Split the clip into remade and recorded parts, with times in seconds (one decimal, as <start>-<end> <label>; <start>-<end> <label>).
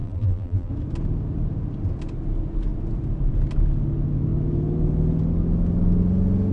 0.0-0.7 remade; 0.7-6.5 recorded